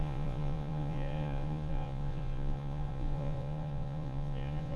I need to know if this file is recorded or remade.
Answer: remade